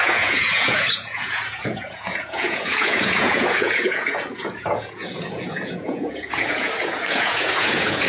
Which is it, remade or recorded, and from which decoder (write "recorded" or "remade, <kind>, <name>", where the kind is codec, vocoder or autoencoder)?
remade, vocoder, Vocos